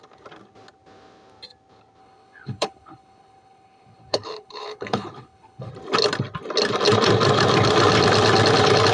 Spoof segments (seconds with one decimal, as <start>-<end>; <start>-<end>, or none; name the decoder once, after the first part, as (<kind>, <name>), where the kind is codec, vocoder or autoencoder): 2.0-5.7 (codec, HILCodec)